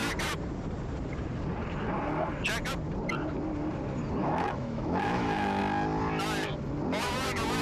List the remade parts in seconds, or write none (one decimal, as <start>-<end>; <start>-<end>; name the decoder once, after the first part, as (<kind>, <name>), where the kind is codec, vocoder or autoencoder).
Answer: 4.2-5.6 (autoencoder, DAC-VAE)